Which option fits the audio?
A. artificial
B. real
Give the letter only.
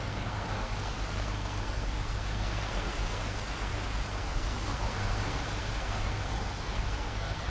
A